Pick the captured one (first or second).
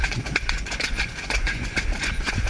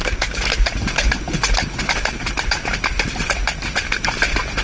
second